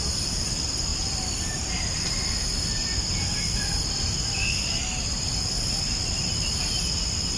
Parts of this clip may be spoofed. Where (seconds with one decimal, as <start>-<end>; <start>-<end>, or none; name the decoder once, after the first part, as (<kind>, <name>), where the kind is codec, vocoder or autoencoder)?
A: none